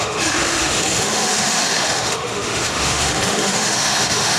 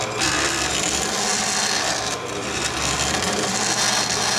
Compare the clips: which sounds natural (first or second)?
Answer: second